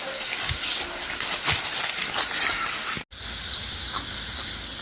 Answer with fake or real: real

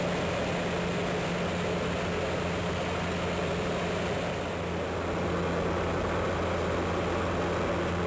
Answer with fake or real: real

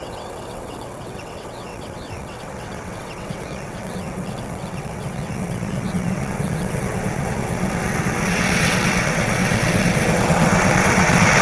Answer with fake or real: fake